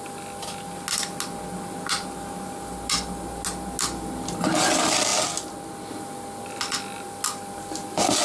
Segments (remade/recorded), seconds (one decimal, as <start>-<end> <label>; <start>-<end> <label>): 0.0-8.2 recorded